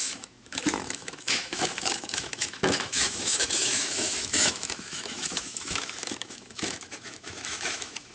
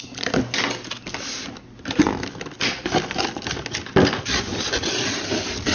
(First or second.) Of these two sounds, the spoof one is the first